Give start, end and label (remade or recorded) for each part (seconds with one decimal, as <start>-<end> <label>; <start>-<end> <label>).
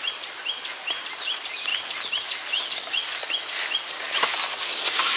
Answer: 0.0-5.2 recorded